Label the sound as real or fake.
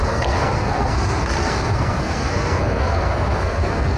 fake